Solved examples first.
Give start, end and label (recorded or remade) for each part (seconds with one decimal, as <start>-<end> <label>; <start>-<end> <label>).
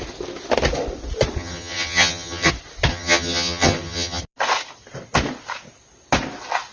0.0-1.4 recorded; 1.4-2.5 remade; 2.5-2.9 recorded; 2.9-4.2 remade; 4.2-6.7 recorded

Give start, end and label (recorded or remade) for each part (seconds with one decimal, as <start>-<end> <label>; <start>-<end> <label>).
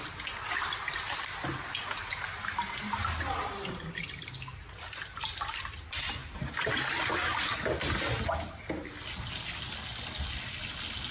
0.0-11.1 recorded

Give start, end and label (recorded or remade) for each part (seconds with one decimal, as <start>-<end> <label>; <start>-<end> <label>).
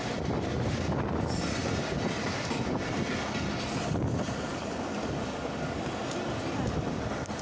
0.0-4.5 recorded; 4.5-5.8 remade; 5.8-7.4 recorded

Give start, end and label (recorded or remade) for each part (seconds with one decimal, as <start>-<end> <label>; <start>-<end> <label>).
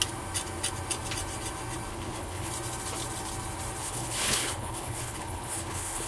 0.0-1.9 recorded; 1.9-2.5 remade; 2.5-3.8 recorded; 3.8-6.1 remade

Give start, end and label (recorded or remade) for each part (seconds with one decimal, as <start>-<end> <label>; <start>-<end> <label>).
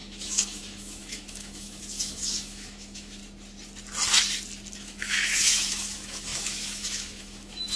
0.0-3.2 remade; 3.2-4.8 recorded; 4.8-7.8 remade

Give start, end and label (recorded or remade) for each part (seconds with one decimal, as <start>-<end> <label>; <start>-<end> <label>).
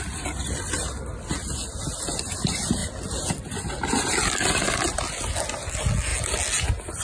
0.0-7.0 recorded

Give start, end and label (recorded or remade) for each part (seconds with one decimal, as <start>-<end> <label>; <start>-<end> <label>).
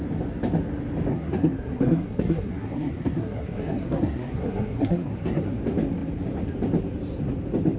0.0-1.1 recorded; 1.1-5.6 remade; 5.6-7.8 recorded